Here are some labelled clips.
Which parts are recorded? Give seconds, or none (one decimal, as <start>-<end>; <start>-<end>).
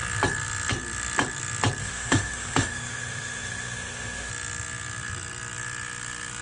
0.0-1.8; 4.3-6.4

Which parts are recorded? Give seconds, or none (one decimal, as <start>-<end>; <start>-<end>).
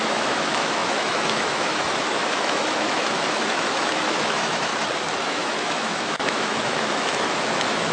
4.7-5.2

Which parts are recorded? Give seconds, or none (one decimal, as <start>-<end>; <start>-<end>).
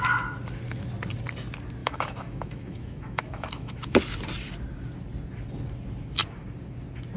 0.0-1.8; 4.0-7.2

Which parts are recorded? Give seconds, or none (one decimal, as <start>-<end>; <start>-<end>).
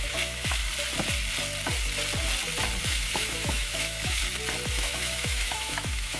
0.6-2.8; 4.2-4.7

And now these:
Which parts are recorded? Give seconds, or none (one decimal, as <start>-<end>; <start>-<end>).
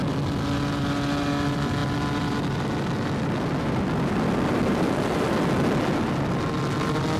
0.0-7.2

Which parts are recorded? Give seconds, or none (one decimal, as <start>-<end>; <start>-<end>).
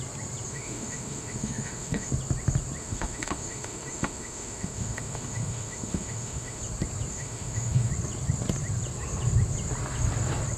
0.0-0.5; 2.1-2.8; 6.6-7.1; 7.9-10.6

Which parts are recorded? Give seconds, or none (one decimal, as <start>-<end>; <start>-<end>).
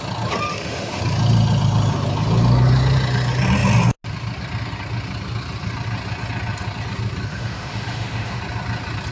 0.0-0.5; 1.0-7.3; 8.4-9.1